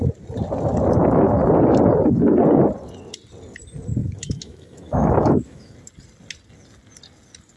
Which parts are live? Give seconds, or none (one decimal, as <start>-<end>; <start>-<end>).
0.0-4.0; 5.7-7.6